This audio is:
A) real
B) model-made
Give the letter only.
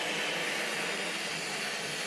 A